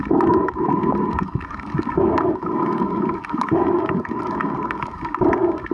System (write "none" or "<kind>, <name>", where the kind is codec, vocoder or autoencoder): codec, DAC